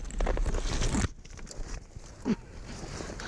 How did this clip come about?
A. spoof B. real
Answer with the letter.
B